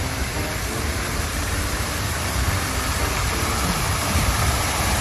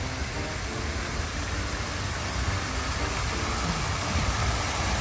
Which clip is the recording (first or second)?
second